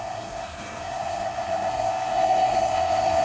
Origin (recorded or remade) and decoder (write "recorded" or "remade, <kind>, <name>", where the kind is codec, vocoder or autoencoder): remade, codec, SNAC